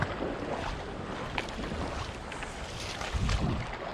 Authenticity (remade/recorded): recorded